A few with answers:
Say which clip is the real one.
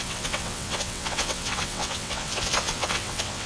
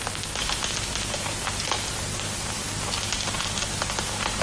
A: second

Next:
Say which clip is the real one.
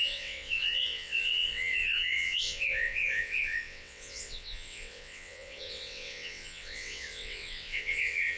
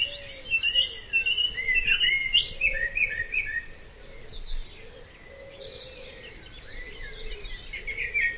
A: second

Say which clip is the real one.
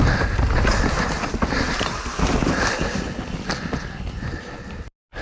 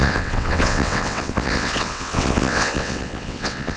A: first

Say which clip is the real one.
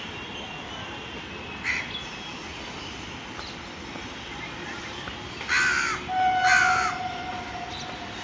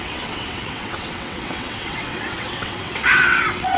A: first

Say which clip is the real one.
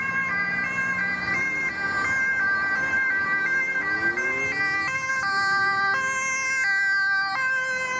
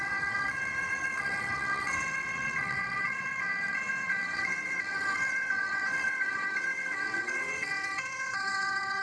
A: first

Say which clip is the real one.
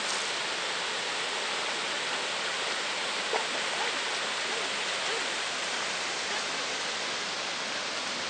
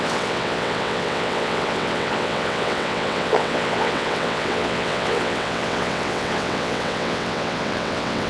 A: first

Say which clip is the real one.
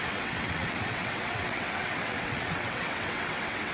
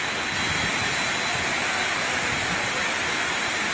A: second